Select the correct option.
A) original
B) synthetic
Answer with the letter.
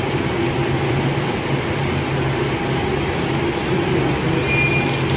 A